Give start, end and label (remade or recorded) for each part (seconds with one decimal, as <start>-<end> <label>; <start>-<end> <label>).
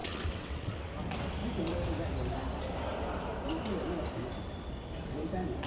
0.0-0.9 remade; 0.9-5.7 recorded